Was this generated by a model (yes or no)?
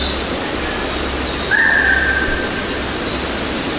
no